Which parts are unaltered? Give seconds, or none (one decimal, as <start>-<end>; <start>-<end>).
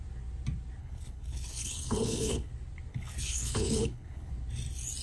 0.0-0.8; 2.5-2.9; 4.3-5.0